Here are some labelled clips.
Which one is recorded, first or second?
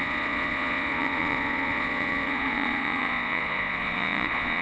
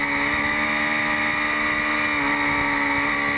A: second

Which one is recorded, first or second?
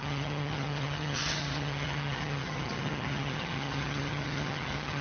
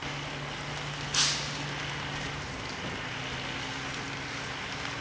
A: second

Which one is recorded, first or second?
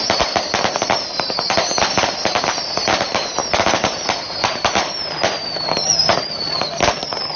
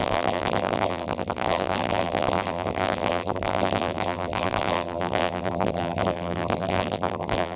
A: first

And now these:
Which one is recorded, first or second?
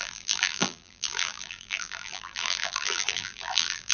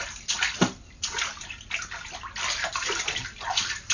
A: second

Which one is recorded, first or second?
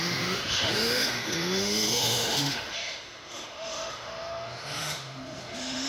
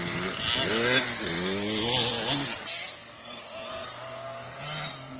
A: second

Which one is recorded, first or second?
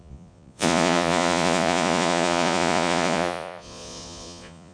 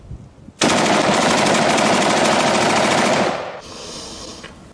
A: second